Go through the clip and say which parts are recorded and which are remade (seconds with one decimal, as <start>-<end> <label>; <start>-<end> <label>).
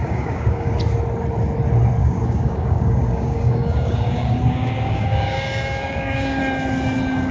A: 0.0-0.7 remade; 0.7-2.0 recorded; 2.0-6.4 remade; 6.4-7.3 recorded